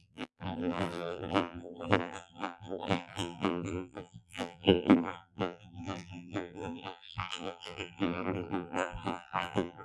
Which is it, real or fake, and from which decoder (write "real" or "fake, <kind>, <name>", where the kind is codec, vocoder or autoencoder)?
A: fake, vocoder, BigVGAN v2